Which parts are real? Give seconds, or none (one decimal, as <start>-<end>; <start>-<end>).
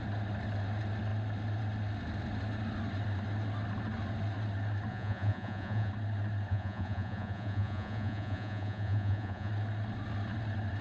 0.0-4.9; 5.9-6.5; 9.5-10.8